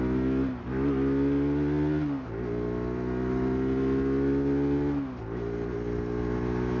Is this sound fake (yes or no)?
no